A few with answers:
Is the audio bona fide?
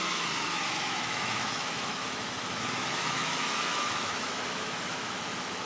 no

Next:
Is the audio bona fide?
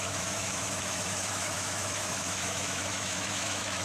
no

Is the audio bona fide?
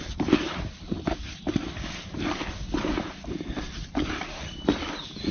yes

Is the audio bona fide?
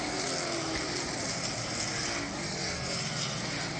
yes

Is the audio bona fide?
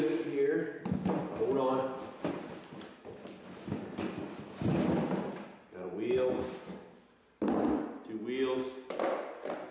yes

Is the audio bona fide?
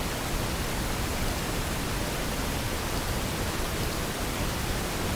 yes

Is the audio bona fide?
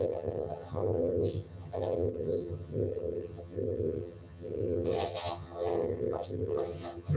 no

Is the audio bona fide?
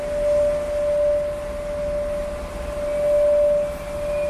yes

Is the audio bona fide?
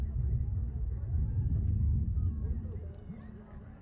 yes